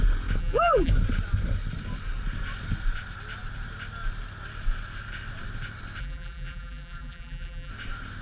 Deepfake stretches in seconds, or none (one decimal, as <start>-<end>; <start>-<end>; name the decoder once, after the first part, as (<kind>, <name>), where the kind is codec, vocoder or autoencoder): 0.4-0.9 (vocoder, BigVGAN v2); 6.0-7.7